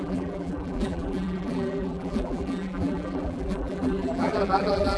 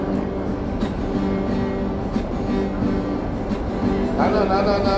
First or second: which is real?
second